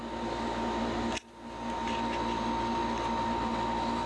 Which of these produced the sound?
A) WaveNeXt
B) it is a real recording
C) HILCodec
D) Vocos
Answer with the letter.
B